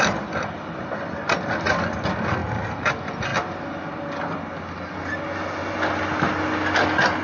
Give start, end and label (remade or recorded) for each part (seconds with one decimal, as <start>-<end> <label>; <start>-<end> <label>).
0.0-7.2 recorded